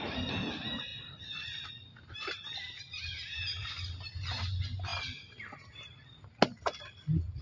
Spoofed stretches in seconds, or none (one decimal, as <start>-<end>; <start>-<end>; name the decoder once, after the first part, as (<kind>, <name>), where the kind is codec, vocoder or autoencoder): none